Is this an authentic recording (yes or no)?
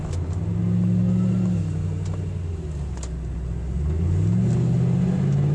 yes